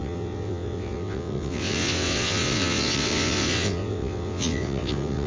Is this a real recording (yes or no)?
no